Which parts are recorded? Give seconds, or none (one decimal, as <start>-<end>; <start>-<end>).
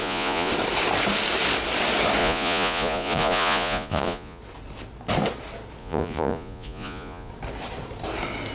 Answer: 0.5-2.2; 4.4-5.8; 7.3-8.5